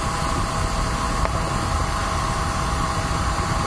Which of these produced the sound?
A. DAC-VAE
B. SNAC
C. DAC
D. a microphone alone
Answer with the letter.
D